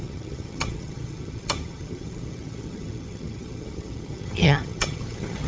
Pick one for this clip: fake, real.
fake